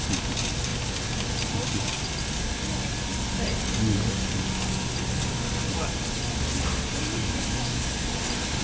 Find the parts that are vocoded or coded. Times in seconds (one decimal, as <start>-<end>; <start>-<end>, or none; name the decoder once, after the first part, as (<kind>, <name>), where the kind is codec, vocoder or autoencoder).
7.2-7.8 (autoencoder, DAC-VAE)

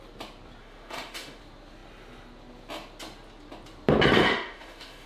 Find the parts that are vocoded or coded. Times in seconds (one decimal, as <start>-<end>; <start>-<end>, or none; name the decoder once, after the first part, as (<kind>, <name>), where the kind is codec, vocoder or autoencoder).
0.6-1.4 (autoencoder, DAC-VAE); 4.2-5.1

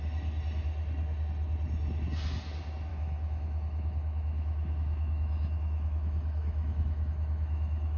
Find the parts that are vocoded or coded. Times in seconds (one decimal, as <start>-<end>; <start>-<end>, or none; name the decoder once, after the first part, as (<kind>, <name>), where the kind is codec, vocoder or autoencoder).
2.9-8.0 (autoencoder, DAC-VAE)

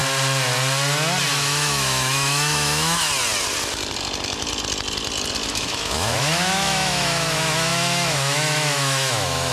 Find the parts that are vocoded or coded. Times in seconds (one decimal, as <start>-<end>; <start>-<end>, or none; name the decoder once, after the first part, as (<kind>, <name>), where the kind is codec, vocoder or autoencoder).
1.3-3.1 (autoencoder, DAC-VAE); 5.5-9.5

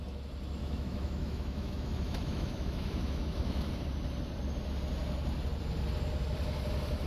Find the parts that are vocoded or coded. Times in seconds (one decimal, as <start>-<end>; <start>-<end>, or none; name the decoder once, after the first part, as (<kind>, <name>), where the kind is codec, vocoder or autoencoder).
0.6-3.7 (autoencoder, DAC-VAE)